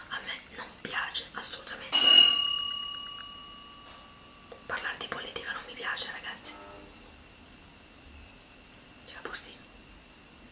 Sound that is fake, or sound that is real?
real